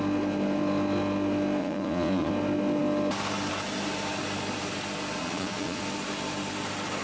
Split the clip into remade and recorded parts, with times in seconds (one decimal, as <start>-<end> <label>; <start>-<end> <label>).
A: 0.0-1.6 recorded; 1.6-2.3 remade; 2.3-5.2 recorded; 5.2-5.8 remade; 5.8-7.0 recorded

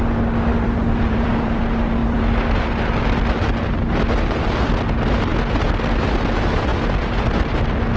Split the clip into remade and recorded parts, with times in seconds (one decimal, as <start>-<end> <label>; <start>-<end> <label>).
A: 0.0-0.5 recorded; 0.5-1.6 remade; 1.6-2.0 recorded; 2.0-2.7 remade; 2.7-6.7 recorded; 6.7-7.6 remade; 7.6-8.0 recorded